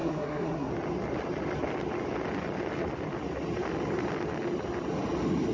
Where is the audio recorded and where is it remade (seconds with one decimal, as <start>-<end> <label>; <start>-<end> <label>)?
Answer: 0.0-0.7 remade; 0.7-5.5 recorded